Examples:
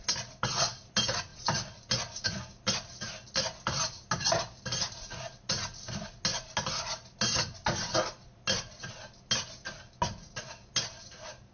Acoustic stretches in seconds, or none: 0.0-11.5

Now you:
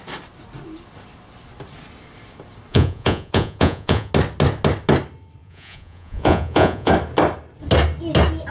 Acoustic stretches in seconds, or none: 0.0-2.7; 4.1-5.4; 6.9-8.5

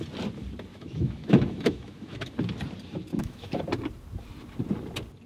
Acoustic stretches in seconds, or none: 0.0-0.7; 2.3-3.1; 3.6-5.3

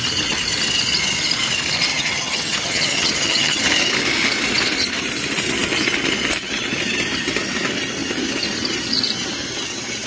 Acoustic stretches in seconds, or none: 0.0-1.9; 3.6-10.1